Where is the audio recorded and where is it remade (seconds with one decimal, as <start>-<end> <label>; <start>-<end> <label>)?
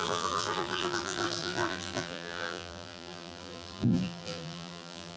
0.0-5.2 remade